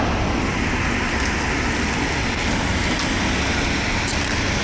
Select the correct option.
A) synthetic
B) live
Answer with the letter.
B